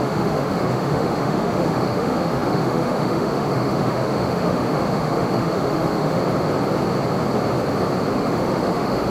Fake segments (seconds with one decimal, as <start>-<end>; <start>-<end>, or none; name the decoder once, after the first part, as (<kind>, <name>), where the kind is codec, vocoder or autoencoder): 0.0-6.2 (autoencoder, DAC-VAE); 8.1-9.1